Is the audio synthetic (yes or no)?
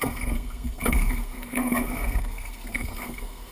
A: yes